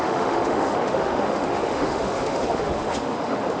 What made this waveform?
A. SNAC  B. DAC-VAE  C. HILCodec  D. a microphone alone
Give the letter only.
B